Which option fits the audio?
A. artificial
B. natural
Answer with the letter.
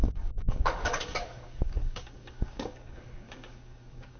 A